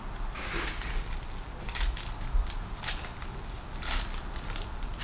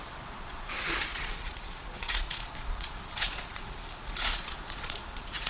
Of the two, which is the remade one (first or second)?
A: second